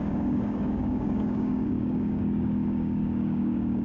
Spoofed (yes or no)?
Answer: yes